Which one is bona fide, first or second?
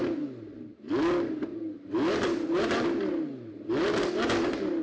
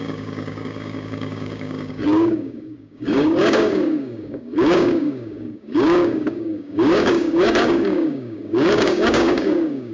first